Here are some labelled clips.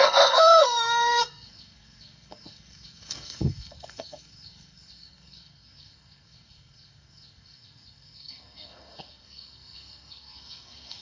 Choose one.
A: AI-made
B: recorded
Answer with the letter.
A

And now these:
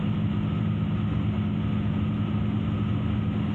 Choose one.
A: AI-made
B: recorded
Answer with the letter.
B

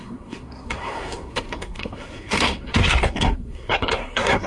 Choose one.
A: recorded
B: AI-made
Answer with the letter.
B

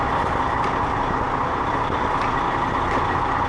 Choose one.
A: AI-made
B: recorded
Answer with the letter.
B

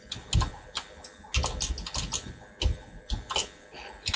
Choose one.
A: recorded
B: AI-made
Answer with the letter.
A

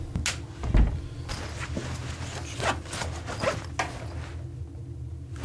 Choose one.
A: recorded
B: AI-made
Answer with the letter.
A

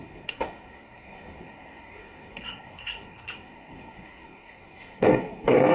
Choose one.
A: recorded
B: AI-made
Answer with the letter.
B